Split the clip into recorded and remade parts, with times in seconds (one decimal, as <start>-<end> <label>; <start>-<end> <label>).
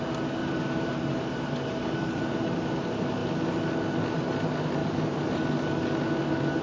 0.0-0.4 recorded; 0.4-2.3 remade; 2.3-4.8 recorded; 4.8-5.4 remade; 5.4-6.6 recorded